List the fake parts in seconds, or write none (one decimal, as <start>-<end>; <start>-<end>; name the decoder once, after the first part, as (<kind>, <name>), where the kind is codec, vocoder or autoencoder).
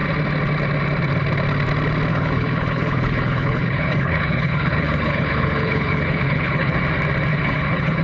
2.1-6.8 (codec, HILCodec); 7.3-8.0